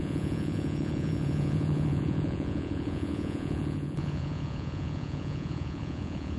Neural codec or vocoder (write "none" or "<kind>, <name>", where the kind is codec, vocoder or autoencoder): vocoder, Vocos